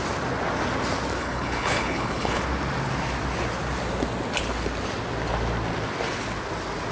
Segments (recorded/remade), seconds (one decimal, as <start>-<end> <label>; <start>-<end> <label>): 0.0-1.2 recorded; 1.2-2.4 remade; 2.4-6.9 recorded